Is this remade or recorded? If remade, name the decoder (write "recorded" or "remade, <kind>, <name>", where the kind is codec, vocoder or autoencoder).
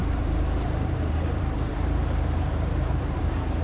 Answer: remade, vocoder, BigVGAN v2